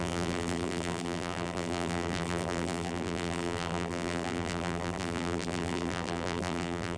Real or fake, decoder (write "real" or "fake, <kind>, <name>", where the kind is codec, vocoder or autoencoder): fake, vocoder, BigVGAN v2